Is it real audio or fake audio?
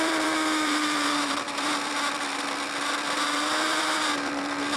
fake